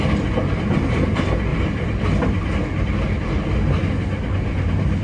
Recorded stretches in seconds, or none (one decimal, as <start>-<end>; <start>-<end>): 0.0-1.5; 2.6-5.0